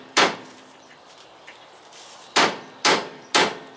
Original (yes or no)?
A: no